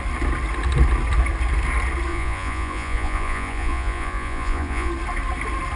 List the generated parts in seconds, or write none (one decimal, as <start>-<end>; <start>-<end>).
2.1-4.9

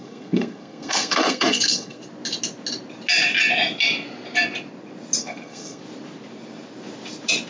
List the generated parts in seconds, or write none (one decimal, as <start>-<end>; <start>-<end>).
0.0-2.0; 5.2-5.8